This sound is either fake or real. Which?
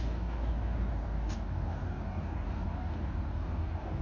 fake